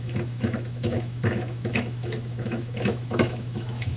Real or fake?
fake